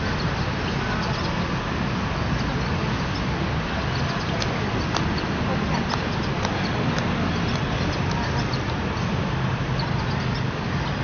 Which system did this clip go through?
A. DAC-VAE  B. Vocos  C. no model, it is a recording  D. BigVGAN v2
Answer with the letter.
C